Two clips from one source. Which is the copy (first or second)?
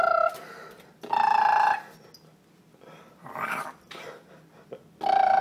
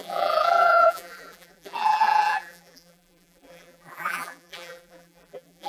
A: second